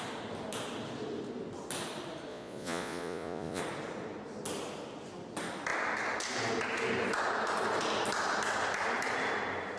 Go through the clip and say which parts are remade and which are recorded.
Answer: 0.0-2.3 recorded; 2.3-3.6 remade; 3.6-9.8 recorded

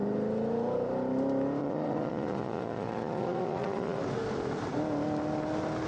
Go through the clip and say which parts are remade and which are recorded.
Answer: 0.0-1.6 recorded; 1.6-4.0 remade; 4.0-5.9 recorded